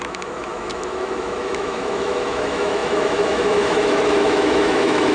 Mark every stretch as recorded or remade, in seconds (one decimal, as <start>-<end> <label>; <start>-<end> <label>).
0.0-5.1 remade